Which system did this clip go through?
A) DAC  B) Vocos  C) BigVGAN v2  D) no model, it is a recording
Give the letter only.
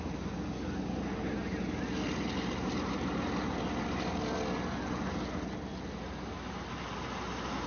D